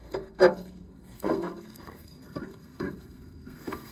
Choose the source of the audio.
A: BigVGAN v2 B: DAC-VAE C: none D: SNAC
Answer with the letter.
D